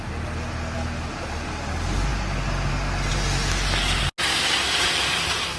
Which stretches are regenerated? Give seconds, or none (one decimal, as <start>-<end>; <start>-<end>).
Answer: none

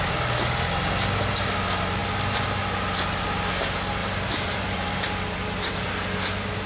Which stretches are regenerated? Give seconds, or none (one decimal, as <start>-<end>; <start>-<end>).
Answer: 2.0-2.6; 4.0-5.9

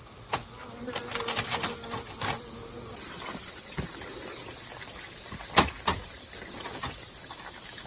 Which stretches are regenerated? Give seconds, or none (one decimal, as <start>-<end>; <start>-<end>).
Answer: none

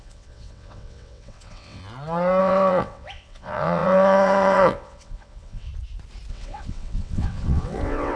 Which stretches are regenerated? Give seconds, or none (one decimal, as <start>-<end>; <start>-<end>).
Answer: 0.0-1.8; 2.4-5.7; 6.3-8.2

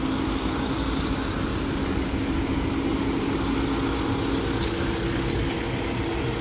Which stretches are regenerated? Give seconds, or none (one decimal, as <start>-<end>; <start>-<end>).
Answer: none

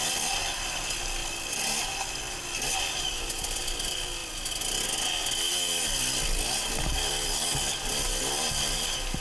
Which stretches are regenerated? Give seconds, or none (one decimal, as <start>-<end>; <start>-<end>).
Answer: none

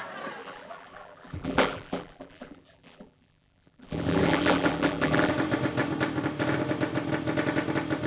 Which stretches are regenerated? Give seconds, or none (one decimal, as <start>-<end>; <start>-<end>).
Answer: 0.4-5.3